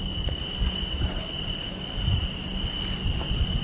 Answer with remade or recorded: recorded